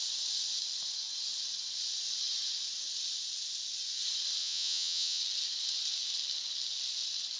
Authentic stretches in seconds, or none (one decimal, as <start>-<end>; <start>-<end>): 0.0-4.4; 5.2-7.4

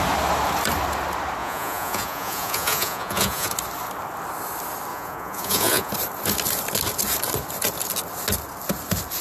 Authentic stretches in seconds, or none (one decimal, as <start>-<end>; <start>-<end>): 0.0-1.4; 3.5-4.9; 5.9-9.2